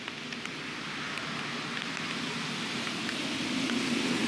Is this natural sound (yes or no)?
yes